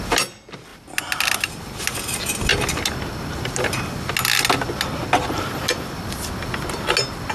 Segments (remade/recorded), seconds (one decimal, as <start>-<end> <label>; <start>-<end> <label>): 0.0-7.3 recorded